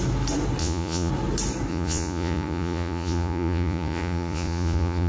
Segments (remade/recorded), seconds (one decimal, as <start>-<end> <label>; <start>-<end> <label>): 0.0-0.6 recorded; 0.6-1.1 remade; 1.1-1.7 recorded; 1.7-5.1 remade